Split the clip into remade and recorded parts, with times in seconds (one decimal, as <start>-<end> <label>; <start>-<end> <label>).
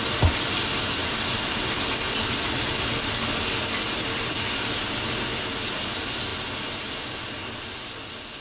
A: 0.0-8.4 recorded